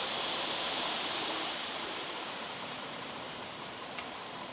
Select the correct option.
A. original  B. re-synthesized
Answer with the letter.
B